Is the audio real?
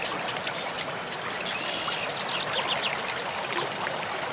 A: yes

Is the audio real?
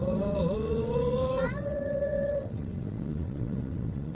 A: no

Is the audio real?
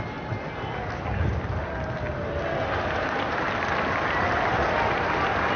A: yes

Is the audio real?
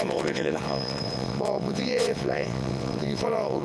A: no